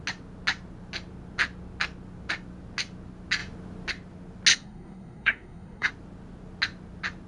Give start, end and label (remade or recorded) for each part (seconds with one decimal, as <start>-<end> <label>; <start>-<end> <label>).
0.0-4.5 recorded; 4.5-5.9 remade; 5.9-7.3 recorded